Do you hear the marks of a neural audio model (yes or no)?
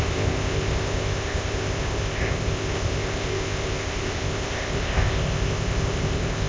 yes